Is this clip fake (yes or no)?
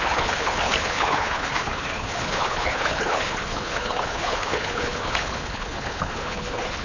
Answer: yes